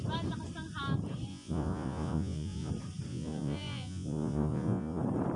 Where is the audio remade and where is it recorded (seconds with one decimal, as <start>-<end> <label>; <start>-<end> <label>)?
0.0-1.3 recorded; 1.3-2.7 remade; 2.7-3.1 recorded; 3.1-5.0 remade; 5.0-5.4 recorded